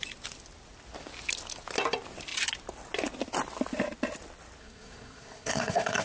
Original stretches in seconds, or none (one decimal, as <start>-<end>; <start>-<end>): 0.0-4.6